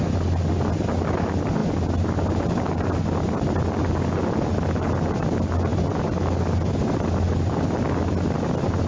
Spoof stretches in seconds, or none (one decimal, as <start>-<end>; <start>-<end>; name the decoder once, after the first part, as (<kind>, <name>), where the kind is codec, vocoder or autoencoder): none